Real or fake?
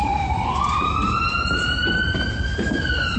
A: fake